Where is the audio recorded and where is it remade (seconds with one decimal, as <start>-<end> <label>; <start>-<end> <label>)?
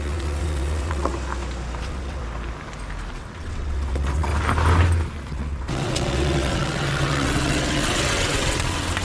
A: 0.0-1.1 remade; 1.1-1.8 recorded; 1.8-2.2 remade; 2.2-3.1 recorded; 3.1-4.3 remade; 4.3-5.3 recorded; 5.3-9.0 remade